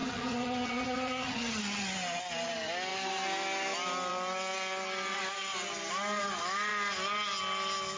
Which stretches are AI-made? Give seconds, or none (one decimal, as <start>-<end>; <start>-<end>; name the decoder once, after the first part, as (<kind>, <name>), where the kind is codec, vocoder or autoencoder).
0.0-1.6 (vocoder, HiFi-GAN)